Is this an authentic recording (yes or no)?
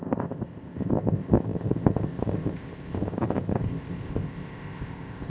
no